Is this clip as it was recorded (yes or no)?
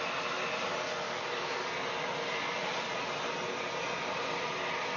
yes